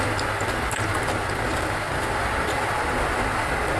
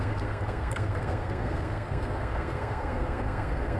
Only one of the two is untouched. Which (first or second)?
first